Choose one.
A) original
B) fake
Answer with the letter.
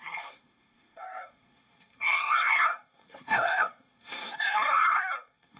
B